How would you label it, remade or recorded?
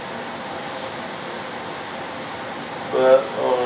recorded